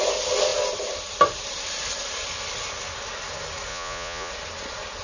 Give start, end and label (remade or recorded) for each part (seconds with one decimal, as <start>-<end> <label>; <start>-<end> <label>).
0.0-3.7 recorded; 3.7-4.3 remade; 4.3-5.0 recorded